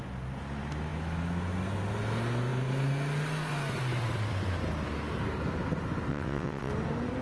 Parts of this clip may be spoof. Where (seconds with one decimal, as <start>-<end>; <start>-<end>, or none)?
6.1-6.7